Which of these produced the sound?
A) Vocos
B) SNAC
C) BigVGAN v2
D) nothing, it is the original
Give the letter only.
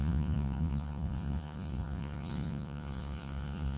A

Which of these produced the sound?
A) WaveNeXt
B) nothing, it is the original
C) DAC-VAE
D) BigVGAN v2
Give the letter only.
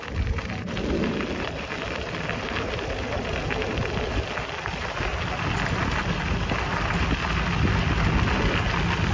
B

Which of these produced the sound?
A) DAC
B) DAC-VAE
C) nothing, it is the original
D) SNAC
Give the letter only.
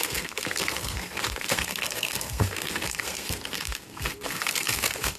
D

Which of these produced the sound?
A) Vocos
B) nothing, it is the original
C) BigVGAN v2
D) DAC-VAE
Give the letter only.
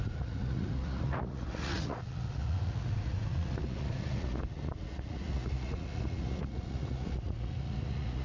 A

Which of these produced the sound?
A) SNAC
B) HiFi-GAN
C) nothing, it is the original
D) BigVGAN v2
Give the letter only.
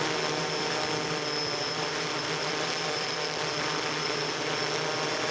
D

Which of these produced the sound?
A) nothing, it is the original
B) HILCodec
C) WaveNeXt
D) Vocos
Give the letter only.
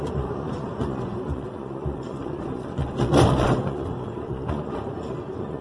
D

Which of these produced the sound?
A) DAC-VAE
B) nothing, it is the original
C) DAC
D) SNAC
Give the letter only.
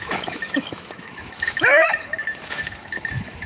A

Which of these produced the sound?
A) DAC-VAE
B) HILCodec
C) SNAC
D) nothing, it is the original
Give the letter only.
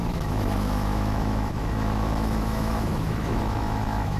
A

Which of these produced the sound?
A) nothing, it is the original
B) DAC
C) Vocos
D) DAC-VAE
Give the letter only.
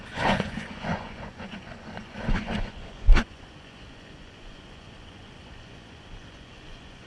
C